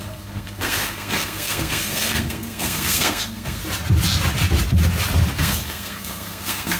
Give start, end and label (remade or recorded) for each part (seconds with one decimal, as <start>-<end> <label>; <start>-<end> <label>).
0.0-3.6 remade; 3.6-5.4 recorded; 5.4-6.8 remade